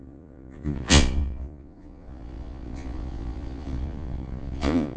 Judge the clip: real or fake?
fake